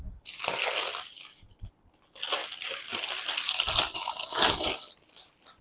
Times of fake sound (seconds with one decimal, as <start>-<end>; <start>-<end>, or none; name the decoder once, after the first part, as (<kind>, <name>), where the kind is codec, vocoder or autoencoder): none